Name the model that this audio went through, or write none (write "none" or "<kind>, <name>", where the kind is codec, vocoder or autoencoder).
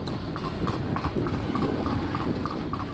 none